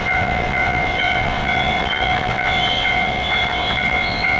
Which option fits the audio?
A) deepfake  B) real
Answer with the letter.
A